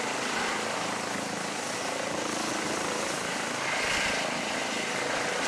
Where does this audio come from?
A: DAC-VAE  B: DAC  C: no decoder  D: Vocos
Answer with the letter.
C